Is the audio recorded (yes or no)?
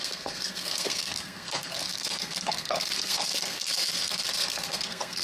no